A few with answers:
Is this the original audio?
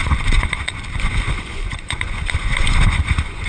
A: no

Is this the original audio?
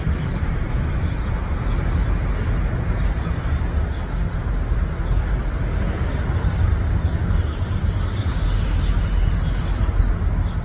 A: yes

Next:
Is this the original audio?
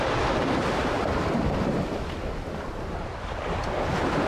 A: yes